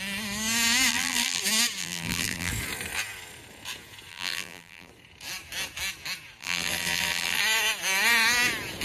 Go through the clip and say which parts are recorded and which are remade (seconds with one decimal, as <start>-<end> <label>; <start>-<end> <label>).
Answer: 0.0-0.9 recorded; 0.9-1.4 remade; 1.4-1.8 recorded; 1.8-2.5 remade; 2.5-4.1 recorded; 4.1-4.9 remade; 4.9-6.4 recorded; 6.4-7.4 remade; 7.4-8.8 recorded